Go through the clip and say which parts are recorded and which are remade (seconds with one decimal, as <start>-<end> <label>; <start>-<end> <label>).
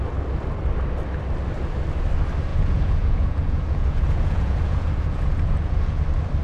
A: 0.0-2.5 recorded; 2.5-6.0 remade; 6.0-6.4 recorded